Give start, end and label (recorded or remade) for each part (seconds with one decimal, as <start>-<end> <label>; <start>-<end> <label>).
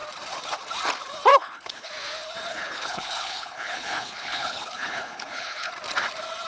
0.0-1.3 recorded; 1.3-1.9 remade; 1.9-2.5 recorded; 2.5-5.7 remade; 5.7-6.5 recorded